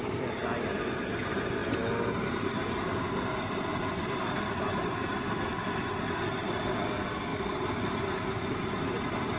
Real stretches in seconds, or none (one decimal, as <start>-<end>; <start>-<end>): 0.0-9.4